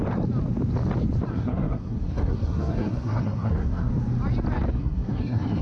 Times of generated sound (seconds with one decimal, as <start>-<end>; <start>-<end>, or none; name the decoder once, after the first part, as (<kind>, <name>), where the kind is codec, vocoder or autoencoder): 1.3-3.9 (codec, SNAC); 4.8-5.6